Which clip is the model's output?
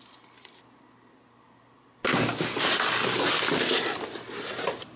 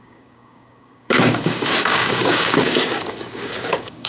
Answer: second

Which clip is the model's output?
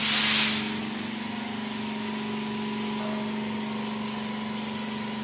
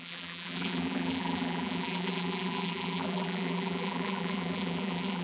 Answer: second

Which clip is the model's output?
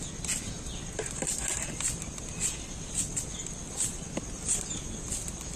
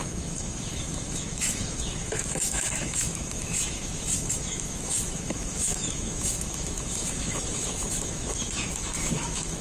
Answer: second